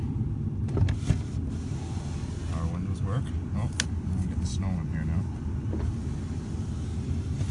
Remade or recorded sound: recorded